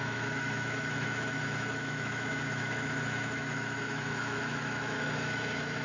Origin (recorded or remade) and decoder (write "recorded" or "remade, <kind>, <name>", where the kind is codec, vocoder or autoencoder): remade, autoencoder, DAC-VAE